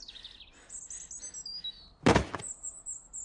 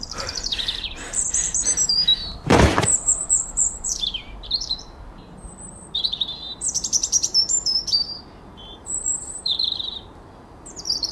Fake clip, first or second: second